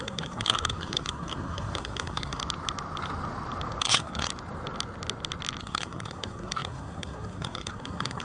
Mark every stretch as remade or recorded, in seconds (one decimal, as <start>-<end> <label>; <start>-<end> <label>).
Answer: 0.0-2.4 remade; 2.4-3.8 recorded; 3.8-4.3 remade; 4.3-5.6 recorded; 5.6-8.2 remade